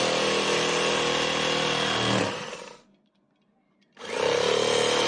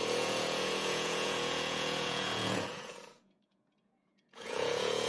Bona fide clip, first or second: first